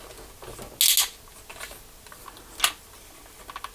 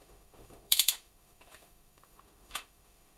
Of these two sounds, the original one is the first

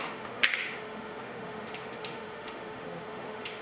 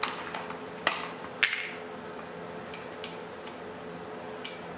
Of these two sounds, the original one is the second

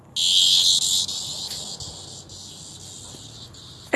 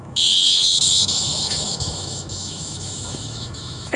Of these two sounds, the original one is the first